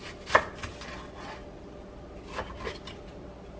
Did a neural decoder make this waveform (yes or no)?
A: no